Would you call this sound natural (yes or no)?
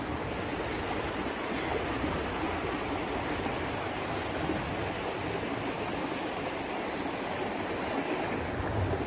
yes